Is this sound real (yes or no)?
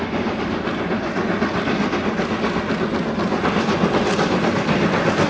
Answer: yes